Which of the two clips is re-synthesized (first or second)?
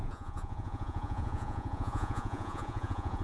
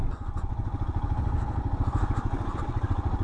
first